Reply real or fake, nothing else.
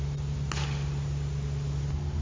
real